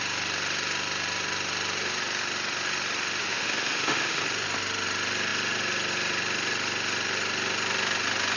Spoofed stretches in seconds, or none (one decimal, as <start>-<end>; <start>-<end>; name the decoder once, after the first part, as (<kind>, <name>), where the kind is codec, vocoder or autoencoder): 3.2-4.2 (autoencoder, DAC-VAE)